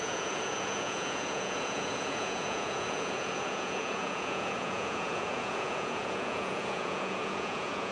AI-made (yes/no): yes